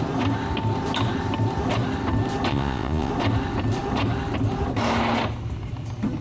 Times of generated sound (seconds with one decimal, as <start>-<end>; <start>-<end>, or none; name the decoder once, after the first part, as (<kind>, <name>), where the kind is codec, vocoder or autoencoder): 2.5-3.1 (vocoder, Vocos)